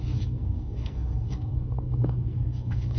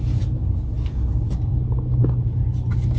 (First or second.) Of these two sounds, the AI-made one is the first